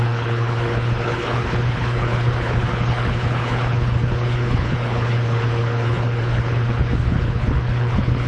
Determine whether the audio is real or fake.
fake